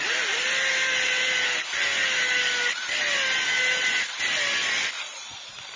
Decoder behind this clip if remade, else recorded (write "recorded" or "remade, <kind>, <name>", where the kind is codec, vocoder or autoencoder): recorded